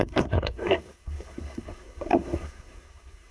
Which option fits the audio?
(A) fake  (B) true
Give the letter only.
A